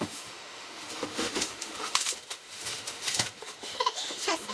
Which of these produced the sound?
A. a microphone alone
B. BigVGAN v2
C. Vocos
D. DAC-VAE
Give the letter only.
D